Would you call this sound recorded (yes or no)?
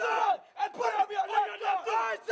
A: yes